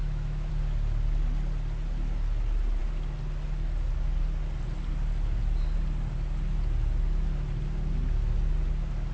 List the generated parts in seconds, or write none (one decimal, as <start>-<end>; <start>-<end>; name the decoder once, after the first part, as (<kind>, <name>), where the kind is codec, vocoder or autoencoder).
0.0-0.5 (autoencoder, DAC-VAE)